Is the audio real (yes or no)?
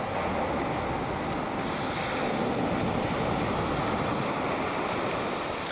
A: yes